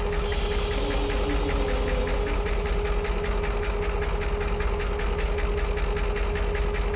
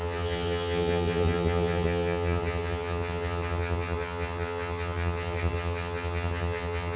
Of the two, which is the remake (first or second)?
second